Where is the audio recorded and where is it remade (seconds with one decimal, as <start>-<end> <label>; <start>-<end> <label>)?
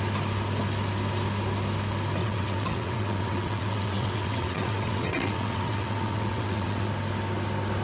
0.0-2.2 recorded; 2.2-6.9 remade; 6.9-7.8 recorded